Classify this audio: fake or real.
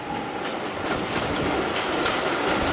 fake